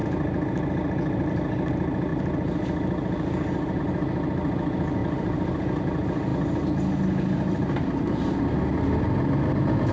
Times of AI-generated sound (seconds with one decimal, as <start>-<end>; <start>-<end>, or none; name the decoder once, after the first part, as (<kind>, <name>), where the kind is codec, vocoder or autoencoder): 5.0-5.8 (vocoder, BigVGAN v2)